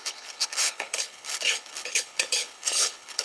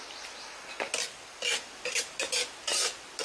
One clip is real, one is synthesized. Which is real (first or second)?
second